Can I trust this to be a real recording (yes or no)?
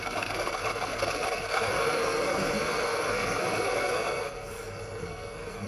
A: no